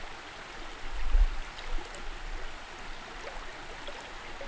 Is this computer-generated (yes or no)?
no